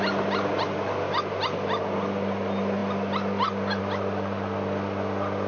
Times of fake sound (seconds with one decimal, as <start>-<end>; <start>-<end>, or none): none